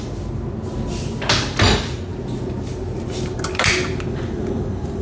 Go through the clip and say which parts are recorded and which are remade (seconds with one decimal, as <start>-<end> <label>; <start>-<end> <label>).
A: 0.0-5.0 recorded